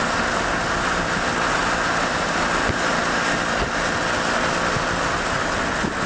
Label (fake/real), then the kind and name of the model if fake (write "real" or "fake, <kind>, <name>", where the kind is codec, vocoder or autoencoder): real